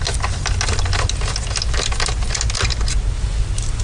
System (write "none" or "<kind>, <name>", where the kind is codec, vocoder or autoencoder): none